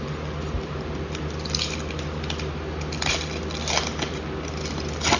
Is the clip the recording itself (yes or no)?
yes